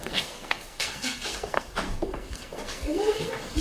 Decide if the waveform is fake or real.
fake